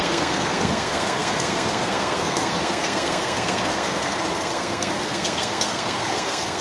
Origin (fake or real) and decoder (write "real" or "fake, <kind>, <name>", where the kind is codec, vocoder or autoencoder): fake, codec, SNAC